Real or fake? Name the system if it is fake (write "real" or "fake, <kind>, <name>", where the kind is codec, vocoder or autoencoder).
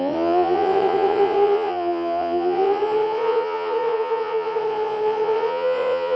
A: fake, vocoder, Vocos